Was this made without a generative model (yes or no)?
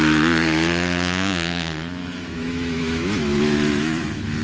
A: no